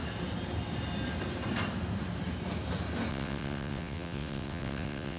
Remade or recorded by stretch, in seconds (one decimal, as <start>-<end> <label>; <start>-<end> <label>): 0.0-3.1 recorded; 3.1-5.2 remade

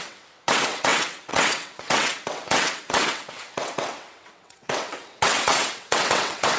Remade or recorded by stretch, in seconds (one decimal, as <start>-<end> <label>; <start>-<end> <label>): 0.0-6.6 remade

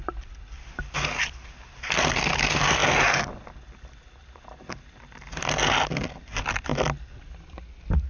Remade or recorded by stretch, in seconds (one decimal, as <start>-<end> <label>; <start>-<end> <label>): 0.0-8.1 recorded

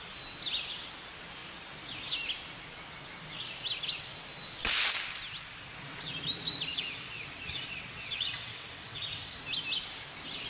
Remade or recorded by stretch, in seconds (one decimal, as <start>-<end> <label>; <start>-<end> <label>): 0.0-6.7 recorded; 6.7-9.4 remade; 9.4-10.5 recorded